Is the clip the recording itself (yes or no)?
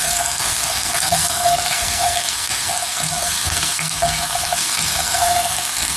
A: no